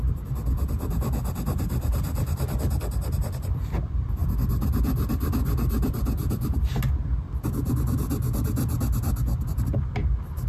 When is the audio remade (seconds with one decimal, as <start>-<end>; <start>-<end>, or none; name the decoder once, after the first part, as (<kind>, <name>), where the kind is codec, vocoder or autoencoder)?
none